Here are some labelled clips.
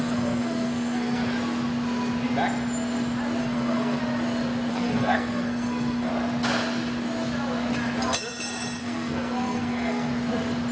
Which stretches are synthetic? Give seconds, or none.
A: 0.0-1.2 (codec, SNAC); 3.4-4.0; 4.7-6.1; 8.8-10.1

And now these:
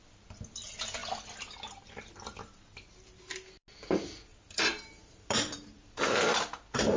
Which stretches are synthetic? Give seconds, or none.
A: 4.3-6.1 (vocoder, BigVGAN v2)

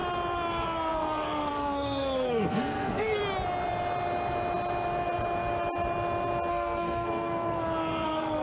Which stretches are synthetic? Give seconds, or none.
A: 0.5-3.2 (codec, SNAC); 6.5-8.4

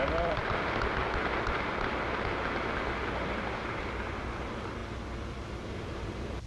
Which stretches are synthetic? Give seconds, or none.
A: 0.0-0.4 (vocoder, BigVGAN v2); 3.0-6.5

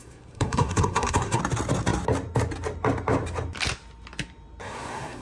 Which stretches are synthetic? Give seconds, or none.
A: 0.0-1.4 (codec, SNAC); 4.6-5.2

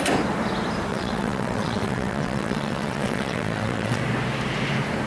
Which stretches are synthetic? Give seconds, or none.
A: 0.9-4.0 (vocoder, WaveNeXt)

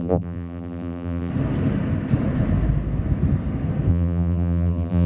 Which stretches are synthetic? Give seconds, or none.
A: 0.0-1.3 (vocoder, BigVGAN v2); 3.9-5.1